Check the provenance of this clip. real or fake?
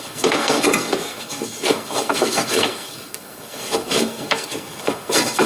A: fake